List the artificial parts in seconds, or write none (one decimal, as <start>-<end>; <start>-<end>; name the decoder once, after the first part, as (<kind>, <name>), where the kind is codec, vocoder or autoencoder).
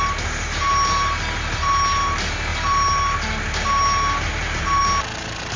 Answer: none